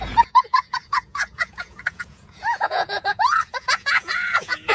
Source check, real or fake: fake